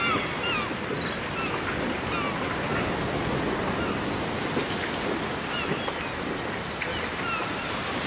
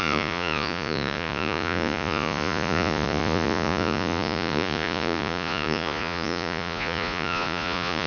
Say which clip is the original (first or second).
first